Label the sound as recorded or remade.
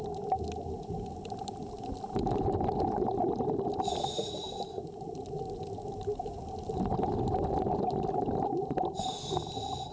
recorded